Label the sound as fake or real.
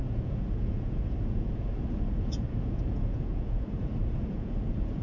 fake